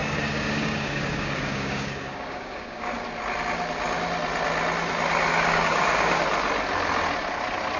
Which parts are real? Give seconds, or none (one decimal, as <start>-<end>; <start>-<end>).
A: 2.9-5.3; 6.2-7.8